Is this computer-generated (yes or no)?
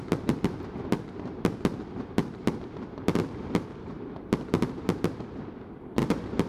yes